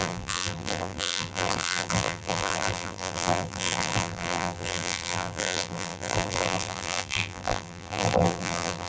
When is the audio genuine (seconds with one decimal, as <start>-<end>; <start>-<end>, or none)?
none